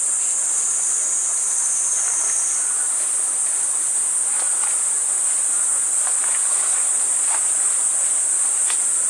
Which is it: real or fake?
real